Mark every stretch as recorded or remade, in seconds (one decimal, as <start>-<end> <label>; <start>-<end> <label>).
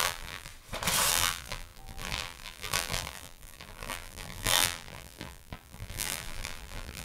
0.0-0.5 remade; 0.5-1.1 recorded; 1.1-7.0 remade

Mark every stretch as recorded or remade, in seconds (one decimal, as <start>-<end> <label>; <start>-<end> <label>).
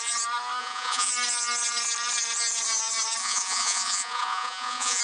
0.0-0.6 recorded; 0.6-1.1 remade; 1.1-3.2 recorded; 3.2-5.0 remade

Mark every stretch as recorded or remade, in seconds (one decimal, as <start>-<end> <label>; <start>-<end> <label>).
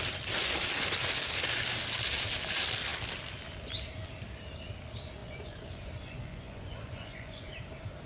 0.0-5.2 recorded; 5.2-7.5 remade; 7.5-8.1 recorded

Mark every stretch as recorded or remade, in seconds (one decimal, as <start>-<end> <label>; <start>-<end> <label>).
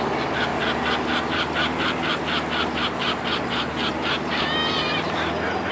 0.0-5.7 recorded